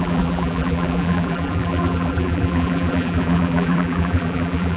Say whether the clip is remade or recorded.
remade